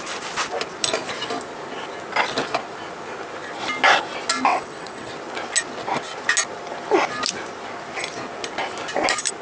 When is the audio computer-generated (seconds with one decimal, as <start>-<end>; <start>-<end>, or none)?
4.5-5.1